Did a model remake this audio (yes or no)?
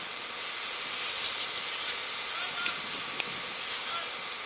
no